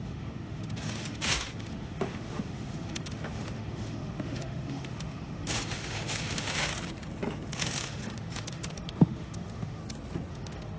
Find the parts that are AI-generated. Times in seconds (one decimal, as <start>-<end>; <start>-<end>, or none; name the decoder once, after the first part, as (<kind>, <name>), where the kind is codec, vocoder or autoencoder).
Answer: 0.0-6.7 (autoencoder, DAC-VAE); 7.5-9.8; 10.3-10.8